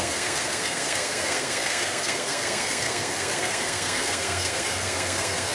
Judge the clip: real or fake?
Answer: fake